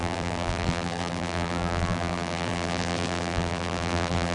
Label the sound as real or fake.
fake